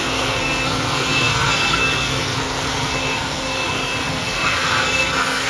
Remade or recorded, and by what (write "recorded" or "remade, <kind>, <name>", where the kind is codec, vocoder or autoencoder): remade, codec, SNAC